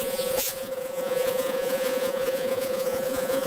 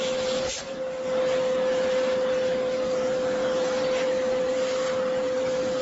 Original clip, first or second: second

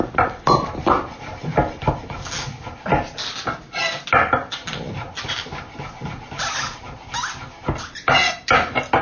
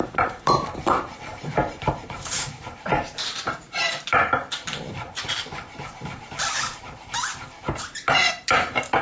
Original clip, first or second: first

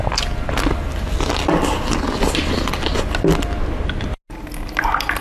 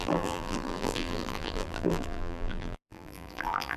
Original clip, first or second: first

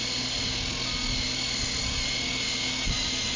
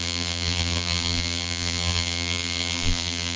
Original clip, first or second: first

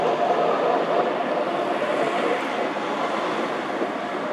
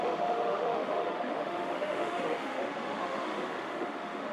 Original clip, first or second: first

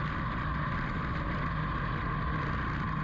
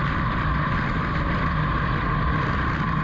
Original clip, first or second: first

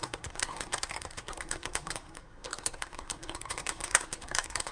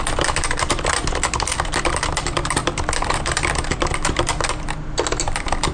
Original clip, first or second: second